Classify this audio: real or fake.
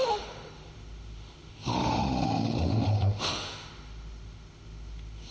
fake